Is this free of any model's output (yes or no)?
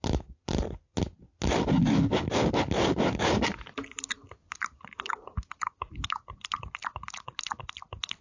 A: yes